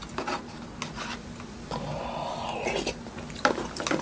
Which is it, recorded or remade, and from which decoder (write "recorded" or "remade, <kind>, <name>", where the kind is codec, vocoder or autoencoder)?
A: recorded